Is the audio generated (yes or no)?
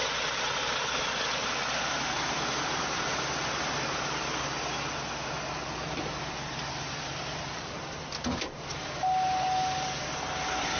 no